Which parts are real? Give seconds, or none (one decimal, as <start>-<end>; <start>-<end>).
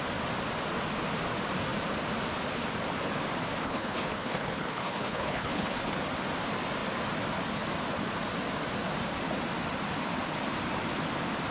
0.0-3.6; 6.0-11.5